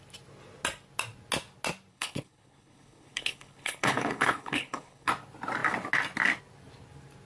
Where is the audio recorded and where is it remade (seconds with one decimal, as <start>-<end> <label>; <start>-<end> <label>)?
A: 0.0-1.9 recorded; 1.9-5.1 remade; 5.1-7.2 recorded